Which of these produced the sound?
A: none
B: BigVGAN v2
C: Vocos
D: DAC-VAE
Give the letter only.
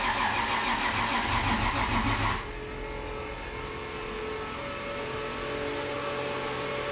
A